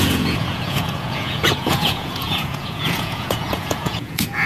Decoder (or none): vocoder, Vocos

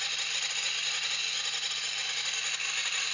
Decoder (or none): none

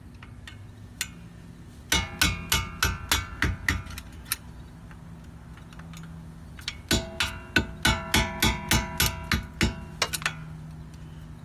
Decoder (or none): none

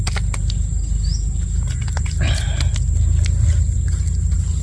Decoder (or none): none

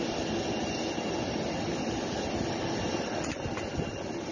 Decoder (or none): none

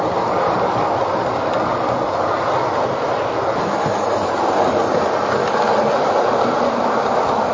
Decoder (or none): none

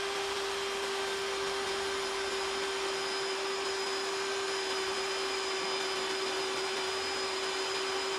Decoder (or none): none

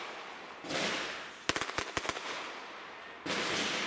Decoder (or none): none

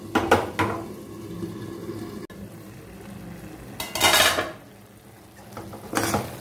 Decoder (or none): none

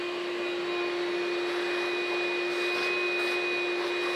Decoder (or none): none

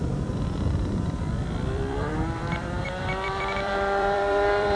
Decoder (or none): vocoder, BigVGAN v2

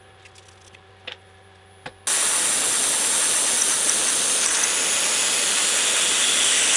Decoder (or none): none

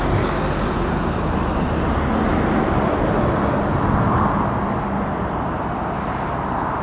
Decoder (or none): none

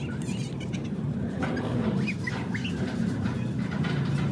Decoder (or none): none